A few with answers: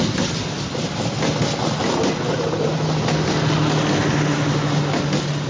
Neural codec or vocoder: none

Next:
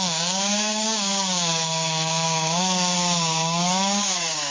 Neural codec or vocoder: codec, DAC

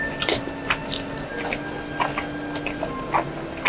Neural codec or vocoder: none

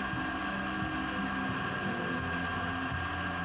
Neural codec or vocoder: none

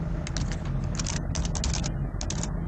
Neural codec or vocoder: none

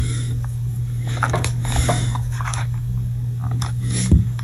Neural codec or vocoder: codec, DAC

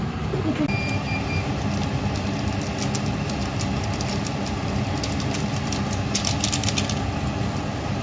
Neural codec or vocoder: none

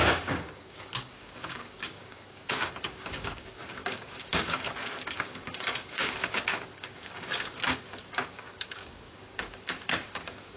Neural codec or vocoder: codec, DAC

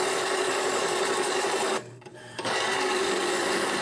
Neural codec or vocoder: codec, DAC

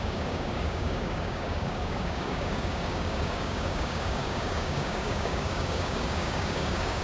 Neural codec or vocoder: codec, DAC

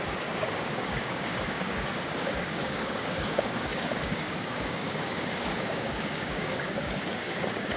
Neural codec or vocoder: codec, DAC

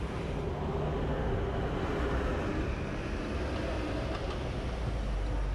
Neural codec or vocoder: none